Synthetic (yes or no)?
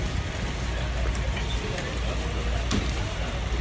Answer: no